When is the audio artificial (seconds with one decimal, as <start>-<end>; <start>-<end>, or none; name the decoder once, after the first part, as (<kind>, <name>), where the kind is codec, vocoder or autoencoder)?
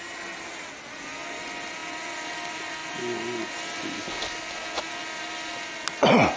2.8-3.5 (vocoder, BigVGAN v2)